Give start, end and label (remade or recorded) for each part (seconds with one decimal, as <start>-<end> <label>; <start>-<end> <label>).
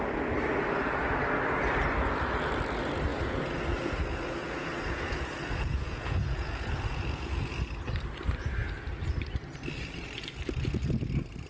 0.0-3.1 recorded; 3.1-7.5 remade; 7.5-11.5 recorded